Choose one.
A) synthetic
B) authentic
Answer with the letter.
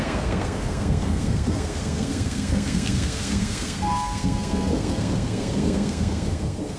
A